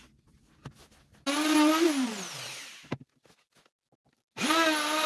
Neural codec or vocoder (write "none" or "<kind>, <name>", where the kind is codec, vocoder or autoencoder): none